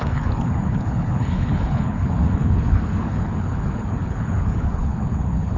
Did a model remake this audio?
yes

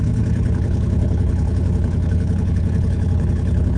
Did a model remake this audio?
yes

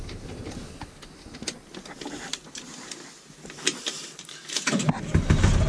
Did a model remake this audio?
no